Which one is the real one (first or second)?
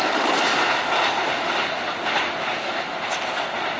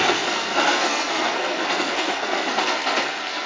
first